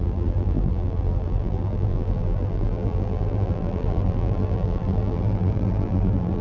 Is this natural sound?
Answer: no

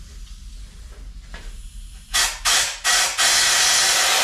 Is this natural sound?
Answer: yes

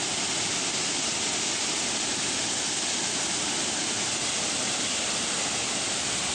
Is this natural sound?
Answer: yes